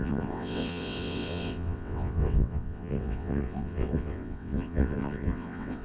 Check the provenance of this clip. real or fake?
fake